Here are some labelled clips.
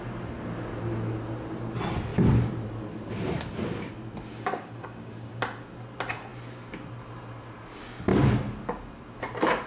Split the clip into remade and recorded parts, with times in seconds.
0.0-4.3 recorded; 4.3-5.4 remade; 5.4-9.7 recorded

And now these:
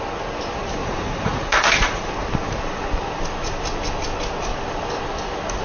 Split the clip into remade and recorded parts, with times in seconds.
0.0-0.8 recorded; 0.8-2.1 remade; 2.1-5.6 recorded

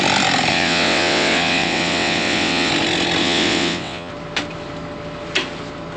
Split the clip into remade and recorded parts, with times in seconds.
0.0-0.5 recorded; 0.5-2.7 remade; 2.7-3.2 recorded; 3.2-4.1 remade; 4.1-6.0 recorded

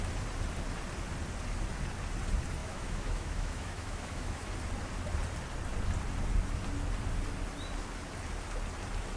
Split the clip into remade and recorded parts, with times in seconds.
0.0-2.6 recorded; 2.6-4.5 remade; 4.5-9.2 recorded

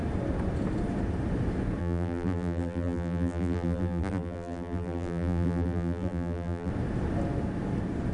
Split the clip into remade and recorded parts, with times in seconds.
0.0-1.8 recorded; 1.8-6.7 remade; 6.7-8.1 recorded